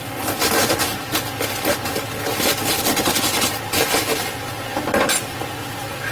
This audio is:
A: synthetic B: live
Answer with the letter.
B